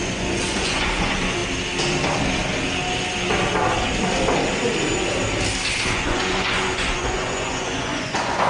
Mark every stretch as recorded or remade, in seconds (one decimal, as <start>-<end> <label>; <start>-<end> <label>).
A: 0.0-1.4 remade; 1.4-5.9 recorded; 5.9-8.5 remade